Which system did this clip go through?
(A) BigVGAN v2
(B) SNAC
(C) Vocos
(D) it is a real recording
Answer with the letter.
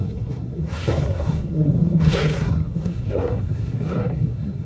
B